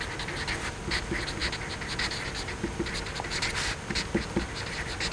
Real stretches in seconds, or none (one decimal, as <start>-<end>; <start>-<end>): 0.0-5.1

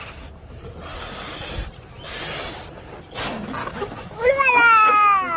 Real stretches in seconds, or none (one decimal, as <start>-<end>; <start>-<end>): 0.0-3.6; 4.3-5.4

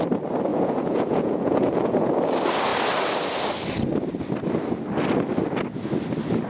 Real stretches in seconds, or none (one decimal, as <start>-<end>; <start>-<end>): 0.0-0.5; 2.2-6.5